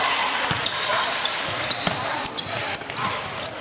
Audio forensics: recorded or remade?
remade